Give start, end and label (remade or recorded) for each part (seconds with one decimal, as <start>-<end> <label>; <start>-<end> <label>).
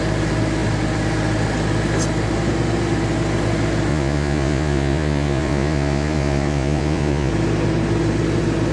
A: 0.0-3.9 recorded; 3.9-7.3 remade; 7.3-8.7 recorded